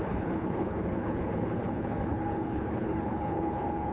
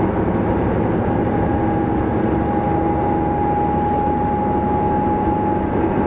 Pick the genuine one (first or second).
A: second